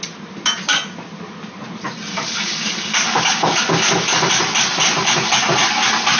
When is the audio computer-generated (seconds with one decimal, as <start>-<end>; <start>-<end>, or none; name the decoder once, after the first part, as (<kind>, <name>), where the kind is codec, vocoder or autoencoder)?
2.1-4.3 (codec, DAC)